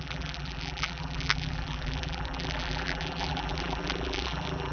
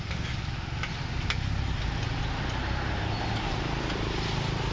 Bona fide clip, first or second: second